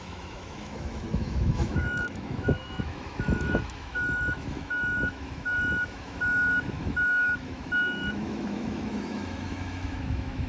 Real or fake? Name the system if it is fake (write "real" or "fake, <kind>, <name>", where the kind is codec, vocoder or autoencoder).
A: fake, autoencoder, DAC-VAE